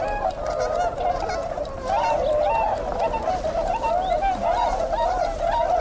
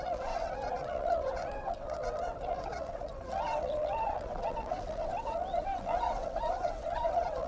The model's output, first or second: second